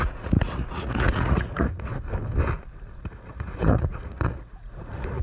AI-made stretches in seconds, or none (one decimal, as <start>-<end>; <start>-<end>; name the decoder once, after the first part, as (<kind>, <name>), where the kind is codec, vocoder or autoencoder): 0.0-1.9 (vocoder, Vocos); 3.0-5.2